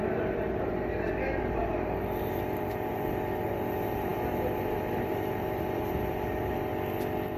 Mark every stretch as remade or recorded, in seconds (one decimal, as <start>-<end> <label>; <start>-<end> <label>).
0.0-6.7 remade; 6.7-7.4 recorded